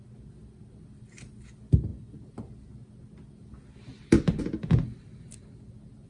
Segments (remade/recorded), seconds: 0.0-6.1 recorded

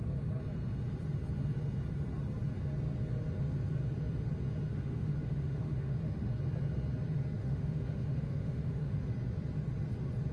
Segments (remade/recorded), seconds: 0.0-4.7 recorded; 4.7-6.3 remade; 6.3-7.4 recorded; 7.4-9.0 remade; 9.0-10.3 recorded

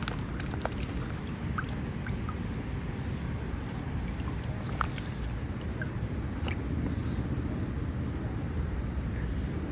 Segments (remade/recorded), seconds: 0.0-9.7 recorded

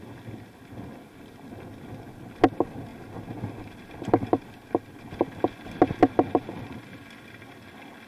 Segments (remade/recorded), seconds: 0.0-8.1 recorded

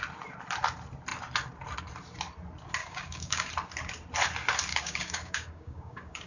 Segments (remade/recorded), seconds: 0.0-2.8 recorded; 2.8-3.5 remade; 3.5-4.7 recorded; 4.7-6.3 remade